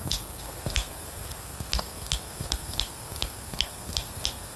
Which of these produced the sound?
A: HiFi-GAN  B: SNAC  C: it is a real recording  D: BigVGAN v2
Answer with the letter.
B